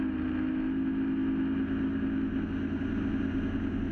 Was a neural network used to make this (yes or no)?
no